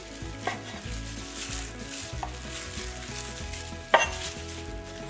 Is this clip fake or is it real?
real